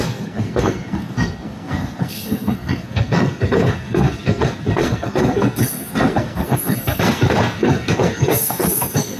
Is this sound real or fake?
fake